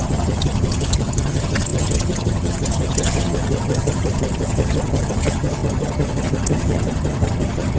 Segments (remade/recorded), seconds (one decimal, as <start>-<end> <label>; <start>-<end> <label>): 0.0-7.8 remade